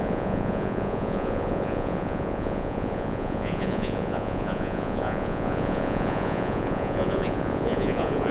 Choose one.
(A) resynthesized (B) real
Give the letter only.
A